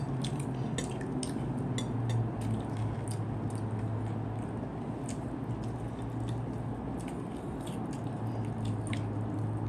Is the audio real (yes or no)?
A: yes